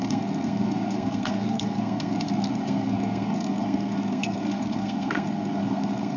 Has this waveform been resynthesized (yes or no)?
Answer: yes